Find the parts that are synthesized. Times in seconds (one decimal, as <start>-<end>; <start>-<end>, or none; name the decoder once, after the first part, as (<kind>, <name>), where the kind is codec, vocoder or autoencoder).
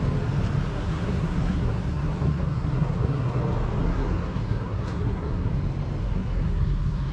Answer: 0.7-3.4 (codec, SNAC); 3.8-5.5; 6.0-7.1